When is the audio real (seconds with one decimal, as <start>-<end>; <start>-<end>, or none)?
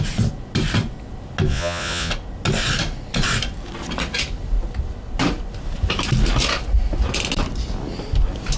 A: 0.0-1.5; 2.1-8.6